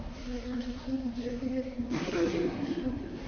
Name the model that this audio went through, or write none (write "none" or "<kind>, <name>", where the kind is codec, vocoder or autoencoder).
codec, SNAC